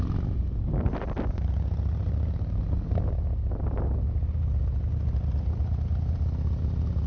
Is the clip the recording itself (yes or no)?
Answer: yes